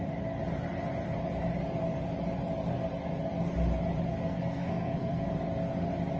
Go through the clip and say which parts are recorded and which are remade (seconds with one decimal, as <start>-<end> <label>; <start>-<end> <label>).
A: 0.0-4.1 recorded; 4.1-5.3 remade; 5.3-6.2 recorded